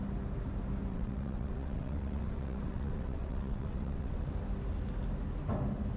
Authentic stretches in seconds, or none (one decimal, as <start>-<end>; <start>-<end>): 0.0-0.9; 4.3-6.0